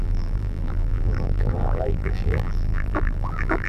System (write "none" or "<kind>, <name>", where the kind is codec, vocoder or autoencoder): vocoder, BigVGAN v2